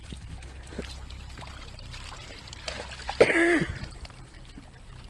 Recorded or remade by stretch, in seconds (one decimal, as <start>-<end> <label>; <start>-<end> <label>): 0.0-5.1 recorded